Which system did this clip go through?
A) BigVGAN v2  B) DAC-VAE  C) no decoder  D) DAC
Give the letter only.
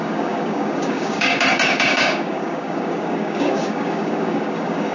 D